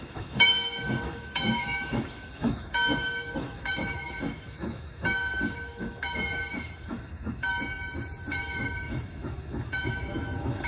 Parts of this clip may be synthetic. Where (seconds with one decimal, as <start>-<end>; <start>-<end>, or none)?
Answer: 0.0-7.5; 8.3-10.7